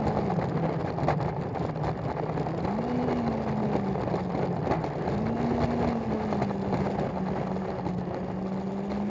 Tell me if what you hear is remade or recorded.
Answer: recorded